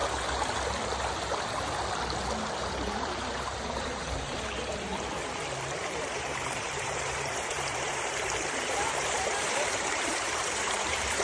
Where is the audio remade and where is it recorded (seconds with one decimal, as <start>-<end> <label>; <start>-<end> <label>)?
0.0-2.7 recorded; 2.7-4.9 remade; 4.9-5.8 recorded; 5.8-11.2 remade